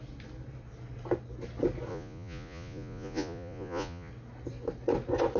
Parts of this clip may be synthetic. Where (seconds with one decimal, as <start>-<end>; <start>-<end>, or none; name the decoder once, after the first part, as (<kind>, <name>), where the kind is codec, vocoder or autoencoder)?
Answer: 1.9-4.1 (vocoder, Vocos)